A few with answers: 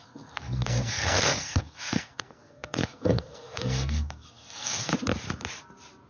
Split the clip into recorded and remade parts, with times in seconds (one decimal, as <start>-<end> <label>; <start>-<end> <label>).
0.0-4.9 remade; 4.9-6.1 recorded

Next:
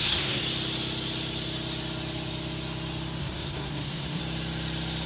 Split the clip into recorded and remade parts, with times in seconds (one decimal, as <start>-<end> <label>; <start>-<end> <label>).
0.0-0.4 remade; 0.4-3.2 recorded; 3.2-4.2 remade; 4.2-5.1 recorded

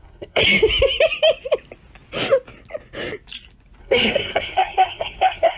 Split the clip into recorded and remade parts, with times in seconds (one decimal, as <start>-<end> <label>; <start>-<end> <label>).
0.0-0.4 remade; 0.4-3.8 recorded; 3.8-5.6 remade

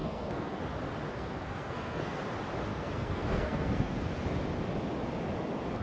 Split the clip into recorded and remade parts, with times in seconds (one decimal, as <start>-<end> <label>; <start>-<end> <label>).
0.0-0.6 remade; 0.6-1.1 recorded; 1.1-2.2 remade; 2.2-2.7 recorded; 2.7-4.0 remade; 4.0-5.8 recorded

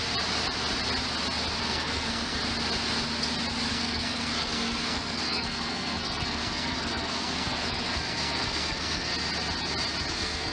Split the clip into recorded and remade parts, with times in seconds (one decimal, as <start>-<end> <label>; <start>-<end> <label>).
0.0-1.6 recorded; 1.6-2.4 remade; 2.4-3.7 recorded; 3.7-9.1 remade; 9.1-10.1 recorded; 10.1-10.5 remade